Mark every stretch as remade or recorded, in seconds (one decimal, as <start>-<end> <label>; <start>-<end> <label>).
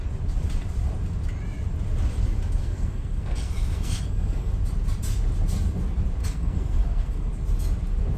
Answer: 0.0-2.6 recorded; 2.6-4.5 remade; 4.5-6.2 recorded; 6.2-7.3 remade; 7.3-8.2 recorded